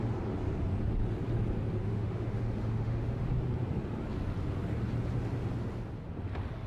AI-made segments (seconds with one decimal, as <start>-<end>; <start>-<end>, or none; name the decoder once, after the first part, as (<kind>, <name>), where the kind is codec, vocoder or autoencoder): 1.8-3.2 (autoencoder, DAC-VAE)